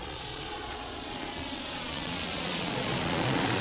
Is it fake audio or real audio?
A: fake